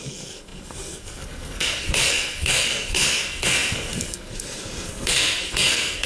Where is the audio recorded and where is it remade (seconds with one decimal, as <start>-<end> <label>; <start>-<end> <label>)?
0.0-6.1 remade